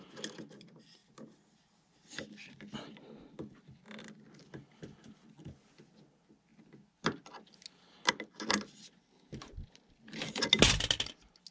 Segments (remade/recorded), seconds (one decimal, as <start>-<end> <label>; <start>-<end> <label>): 0.0-11.5 recorded